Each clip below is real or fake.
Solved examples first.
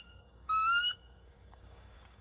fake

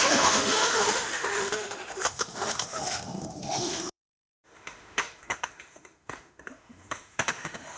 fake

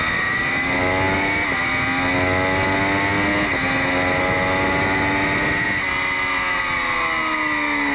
real